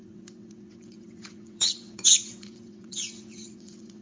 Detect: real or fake fake